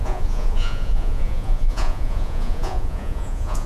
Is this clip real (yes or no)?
no